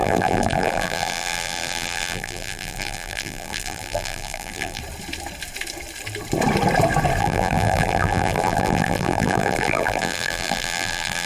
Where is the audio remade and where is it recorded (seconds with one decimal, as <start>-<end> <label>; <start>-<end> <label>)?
0.0-4.8 remade; 4.8-7.2 recorded; 7.2-11.3 remade